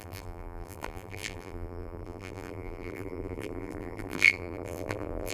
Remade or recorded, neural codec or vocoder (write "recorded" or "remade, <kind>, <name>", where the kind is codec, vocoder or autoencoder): remade, vocoder, BigVGAN v2